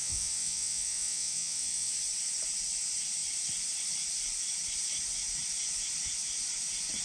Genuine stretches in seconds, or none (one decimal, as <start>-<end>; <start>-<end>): 1.9-7.0